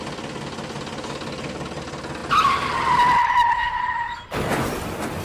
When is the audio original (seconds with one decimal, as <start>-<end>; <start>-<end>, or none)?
0.0-5.2